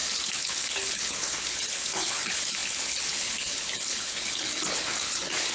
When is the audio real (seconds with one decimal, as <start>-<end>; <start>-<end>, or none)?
none